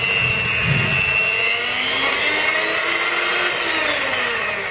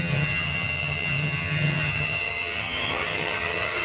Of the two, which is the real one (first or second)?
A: first